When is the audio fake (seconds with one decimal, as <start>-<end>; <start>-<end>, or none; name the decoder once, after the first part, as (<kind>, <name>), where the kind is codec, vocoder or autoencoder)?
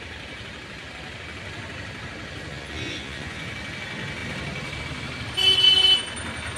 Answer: 2.5-3.5 (vocoder, Vocos)